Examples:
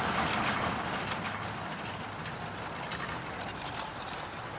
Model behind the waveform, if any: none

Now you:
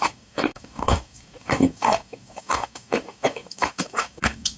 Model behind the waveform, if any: codec, DAC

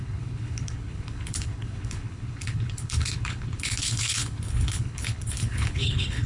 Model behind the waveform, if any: codec, HILCodec